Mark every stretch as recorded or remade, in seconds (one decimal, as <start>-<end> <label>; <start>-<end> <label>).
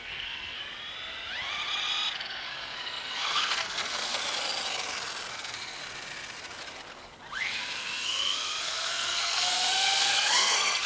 0.0-0.6 remade; 0.6-2.2 recorded; 2.2-4.2 remade; 4.2-5.3 recorded; 5.3-5.8 remade; 5.8-7.4 recorded; 7.4-10.9 remade